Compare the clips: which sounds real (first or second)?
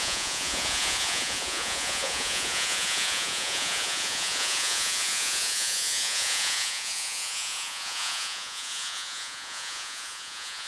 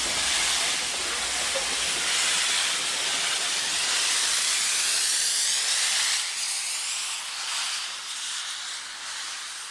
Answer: second